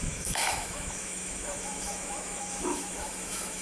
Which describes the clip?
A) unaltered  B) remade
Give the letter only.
B